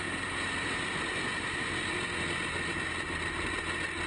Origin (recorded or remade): recorded